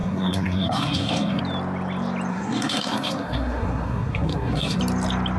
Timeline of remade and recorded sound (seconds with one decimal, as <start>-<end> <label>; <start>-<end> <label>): 0.0-1.4 remade; 1.4-2.3 recorded; 2.3-4.8 remade; 4.8-5.4 recorded